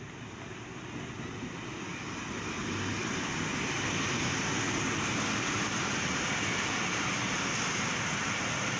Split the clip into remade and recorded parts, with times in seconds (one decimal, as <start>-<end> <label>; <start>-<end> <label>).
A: 0.0-8.8 recorded